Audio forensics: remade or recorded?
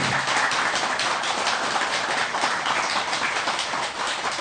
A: remade